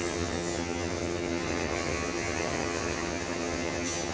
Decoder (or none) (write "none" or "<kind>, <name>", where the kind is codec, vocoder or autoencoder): vocoder, HiFi-GAN